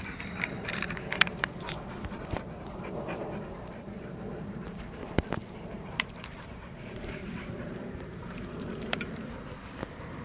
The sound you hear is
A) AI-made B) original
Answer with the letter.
A